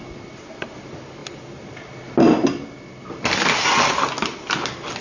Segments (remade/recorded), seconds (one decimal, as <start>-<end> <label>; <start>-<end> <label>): 0.0-5.0 recorded